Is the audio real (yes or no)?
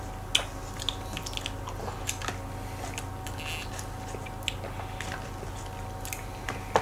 yes